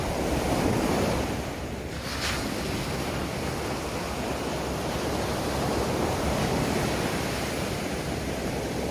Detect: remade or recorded remade